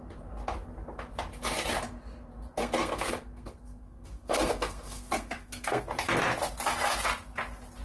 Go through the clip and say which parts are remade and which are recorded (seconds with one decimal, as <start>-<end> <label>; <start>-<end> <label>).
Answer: 0.0-2.6 recorded; 2.6-5.8 remade; 5.8-7.8 recorded